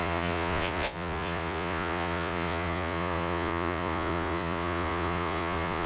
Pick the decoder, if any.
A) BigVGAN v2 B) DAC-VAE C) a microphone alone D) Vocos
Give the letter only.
D